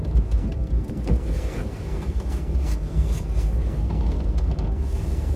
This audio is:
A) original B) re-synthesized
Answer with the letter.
B